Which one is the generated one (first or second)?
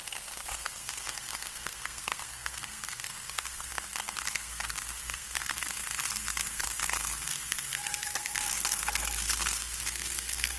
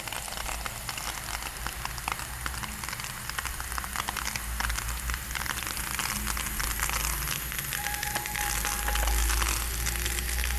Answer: first